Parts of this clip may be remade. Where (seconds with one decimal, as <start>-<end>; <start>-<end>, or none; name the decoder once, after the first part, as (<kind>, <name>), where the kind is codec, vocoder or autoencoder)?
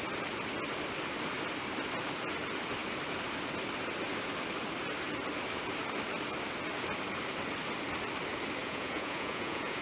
8.6-9.8 (vocoder, Vocos)